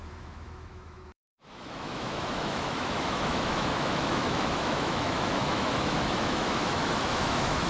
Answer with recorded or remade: remade